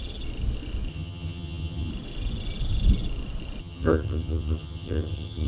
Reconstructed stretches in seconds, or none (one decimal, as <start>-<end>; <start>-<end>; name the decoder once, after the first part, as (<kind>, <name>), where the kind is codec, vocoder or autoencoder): 0.9-1.9 (vocoder, HiFi-GAN); 3.6-5.5